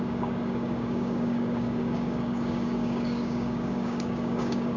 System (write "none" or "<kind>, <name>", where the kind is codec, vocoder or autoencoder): codec, DAC